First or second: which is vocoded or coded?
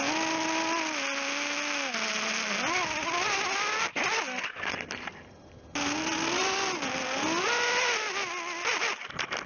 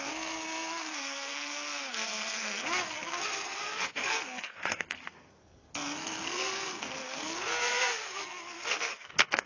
second